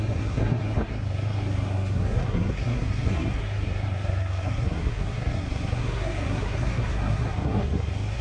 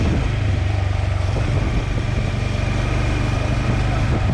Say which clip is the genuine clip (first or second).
second